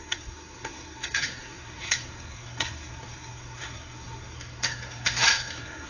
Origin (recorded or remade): remade